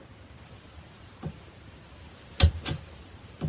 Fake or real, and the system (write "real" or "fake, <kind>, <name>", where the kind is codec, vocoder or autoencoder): real